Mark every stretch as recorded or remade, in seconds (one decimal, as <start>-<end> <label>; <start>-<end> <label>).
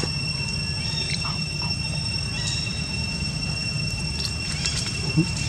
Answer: 0.0-1.0 recorded; 1.0-1.8 remade; 1.8-2.7 recorded; 2.7-5.5 remade